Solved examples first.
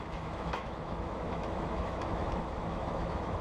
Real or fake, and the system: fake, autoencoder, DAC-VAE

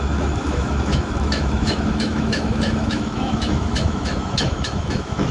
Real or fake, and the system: fake, autoencoder, DAC-VAE